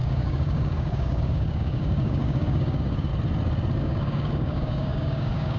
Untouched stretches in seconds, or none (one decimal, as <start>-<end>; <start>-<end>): 3.1-3.8